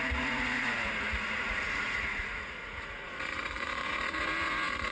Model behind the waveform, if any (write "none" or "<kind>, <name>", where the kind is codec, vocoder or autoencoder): vocoder, Vocos